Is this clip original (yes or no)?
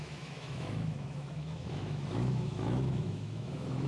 no